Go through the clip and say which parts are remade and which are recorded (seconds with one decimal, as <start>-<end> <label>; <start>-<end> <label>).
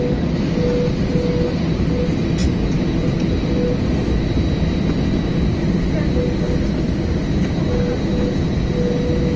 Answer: 0.0-9.4 recorded